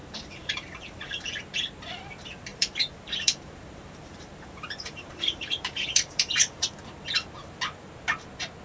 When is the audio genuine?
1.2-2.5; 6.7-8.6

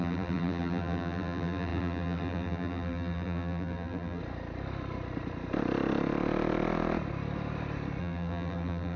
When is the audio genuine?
4.2-8.0

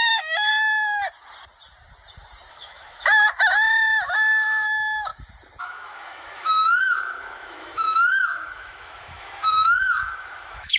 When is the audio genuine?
0.5-2.5; 5.1-5.6

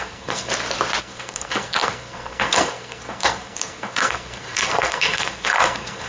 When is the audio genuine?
0.5-1.0

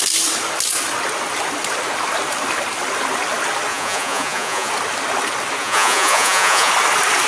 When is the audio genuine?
0.0-3.7; 4.7-5.6; 6.7-7.3

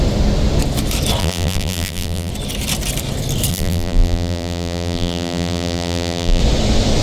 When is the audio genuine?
0.0-1.2; 2.3-3.5; 6.4-7.0

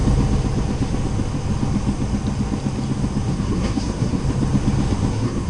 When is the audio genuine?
0.0-3.3; 4.2-5.1

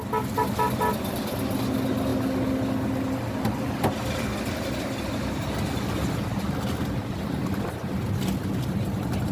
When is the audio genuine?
0.0-9.3